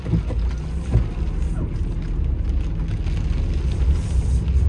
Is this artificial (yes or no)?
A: no